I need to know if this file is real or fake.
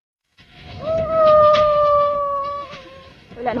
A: fake